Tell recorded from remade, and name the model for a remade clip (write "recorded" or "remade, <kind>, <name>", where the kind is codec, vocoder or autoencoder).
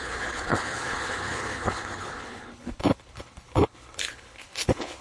remade, codec, HILCodec